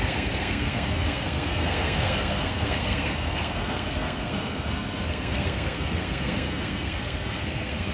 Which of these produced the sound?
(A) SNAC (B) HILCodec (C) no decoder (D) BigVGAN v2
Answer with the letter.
A